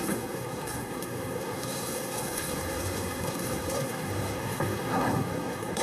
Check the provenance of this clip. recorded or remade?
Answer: remade